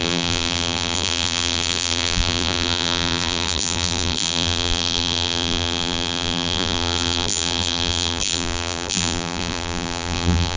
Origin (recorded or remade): remade